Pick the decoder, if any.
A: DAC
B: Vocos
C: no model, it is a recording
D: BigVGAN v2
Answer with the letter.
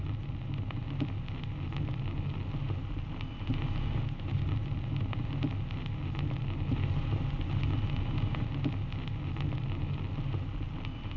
C